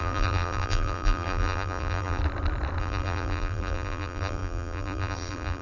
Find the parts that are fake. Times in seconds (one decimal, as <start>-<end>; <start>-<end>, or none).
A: 0.0-2.2; 2.8-5.6